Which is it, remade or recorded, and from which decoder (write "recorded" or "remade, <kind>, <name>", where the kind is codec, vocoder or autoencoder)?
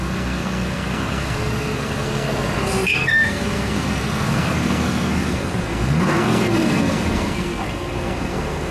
remade, codec, SNAC